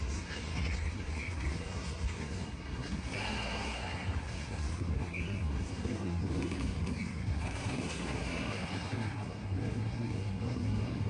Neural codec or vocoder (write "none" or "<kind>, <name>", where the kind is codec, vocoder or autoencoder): codec, SNAC